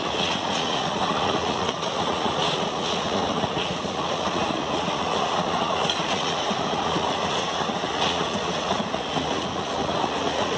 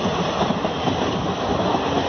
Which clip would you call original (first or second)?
second